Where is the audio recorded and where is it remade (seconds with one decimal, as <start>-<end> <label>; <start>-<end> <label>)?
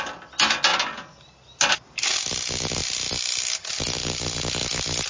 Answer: 0.0-5.1 recorded